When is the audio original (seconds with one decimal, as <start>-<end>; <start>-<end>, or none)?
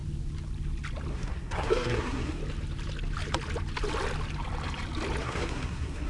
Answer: 0.0-1.1; 2.4-5.2